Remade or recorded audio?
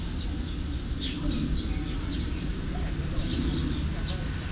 recorded